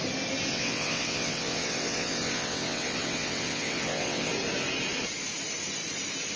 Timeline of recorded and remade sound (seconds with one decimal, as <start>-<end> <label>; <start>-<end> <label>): 0.0-0.5 recorded; 0.5-4.3 remade; 4.3-6.4 recorded